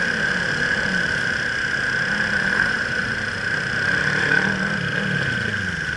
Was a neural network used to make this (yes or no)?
no